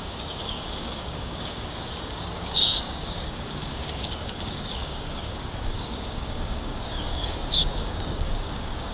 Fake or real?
fake